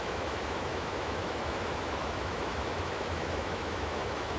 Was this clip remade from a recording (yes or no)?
yes